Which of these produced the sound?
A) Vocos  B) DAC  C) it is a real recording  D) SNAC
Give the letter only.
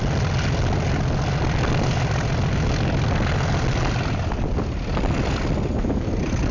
C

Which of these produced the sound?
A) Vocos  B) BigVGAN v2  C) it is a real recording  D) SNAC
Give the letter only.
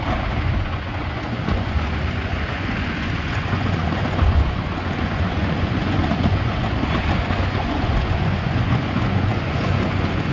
A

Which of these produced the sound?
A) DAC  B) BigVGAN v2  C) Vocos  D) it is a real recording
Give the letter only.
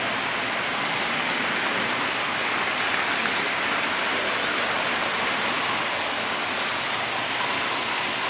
D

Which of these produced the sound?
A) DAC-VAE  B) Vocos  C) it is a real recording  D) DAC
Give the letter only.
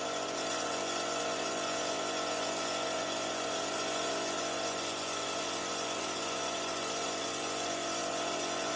B